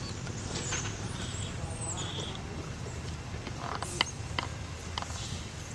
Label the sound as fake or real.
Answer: real